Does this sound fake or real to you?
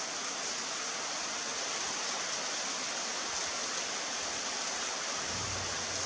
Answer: real